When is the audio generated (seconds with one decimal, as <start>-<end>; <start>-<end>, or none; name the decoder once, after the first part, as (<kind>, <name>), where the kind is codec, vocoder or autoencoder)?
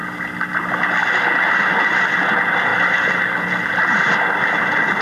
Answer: none